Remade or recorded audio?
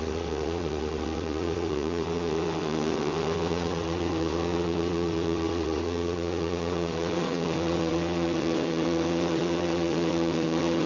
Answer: remade